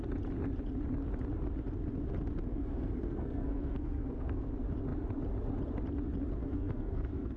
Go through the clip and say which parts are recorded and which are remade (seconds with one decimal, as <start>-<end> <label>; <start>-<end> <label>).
0.0-2.5 recorded; 2.5-4.5 remade; 4.5-6.4 recorded; 6.4-7.4 remade